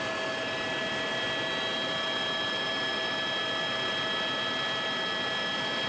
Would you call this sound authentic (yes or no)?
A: yes